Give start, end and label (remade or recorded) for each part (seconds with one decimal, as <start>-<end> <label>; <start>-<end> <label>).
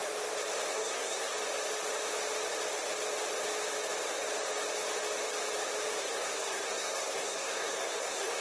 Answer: 0.0-0.7 recorded; 0.7-1.3 remade; 1.3-6.0 recorded; 6.0-8.4 remade